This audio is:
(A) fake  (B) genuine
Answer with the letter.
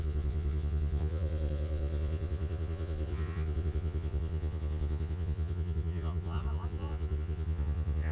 A